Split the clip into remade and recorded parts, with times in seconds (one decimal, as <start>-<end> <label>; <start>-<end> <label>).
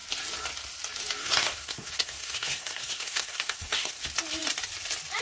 0.0-1.2 recorded; 1.2-4.0 remade; 4.0-5.2 recorded